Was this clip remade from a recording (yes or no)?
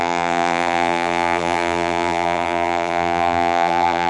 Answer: yes